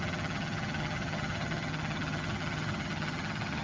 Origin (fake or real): fake